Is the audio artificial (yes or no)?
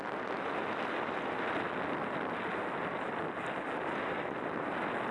no